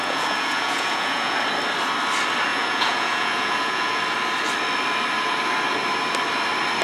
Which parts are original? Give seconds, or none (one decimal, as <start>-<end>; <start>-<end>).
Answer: 1.4-2.5; 4.0-6.8